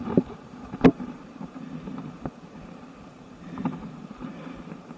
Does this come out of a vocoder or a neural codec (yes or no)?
yes